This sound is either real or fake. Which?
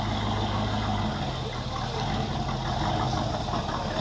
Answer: real